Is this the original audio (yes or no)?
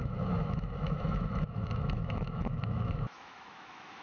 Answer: no